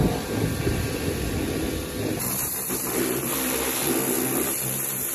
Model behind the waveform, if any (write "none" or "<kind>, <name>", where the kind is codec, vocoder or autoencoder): none